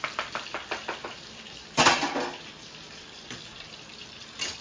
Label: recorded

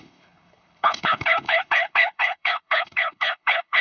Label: remade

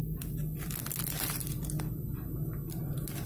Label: recorded